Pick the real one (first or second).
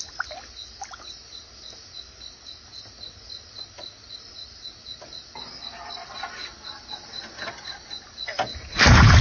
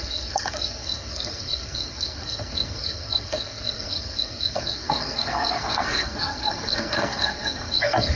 first